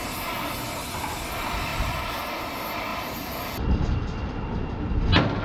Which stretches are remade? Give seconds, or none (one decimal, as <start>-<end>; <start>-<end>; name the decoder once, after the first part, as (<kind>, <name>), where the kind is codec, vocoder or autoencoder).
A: 1.7-2.3 (vocoder, BigVGAN v2); 2.9-3.6

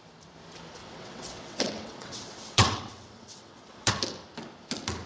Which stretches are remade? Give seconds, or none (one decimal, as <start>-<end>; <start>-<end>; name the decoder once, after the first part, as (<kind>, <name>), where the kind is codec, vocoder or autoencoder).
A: 0.8-3.9 (vocoder, WaveNeXt)